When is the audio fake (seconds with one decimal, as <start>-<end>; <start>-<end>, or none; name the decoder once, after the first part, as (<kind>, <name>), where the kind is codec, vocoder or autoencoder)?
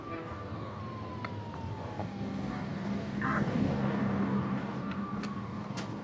0.0-0.8 (codec, DAC); 1.7-6.0